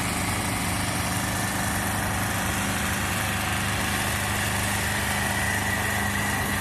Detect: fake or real real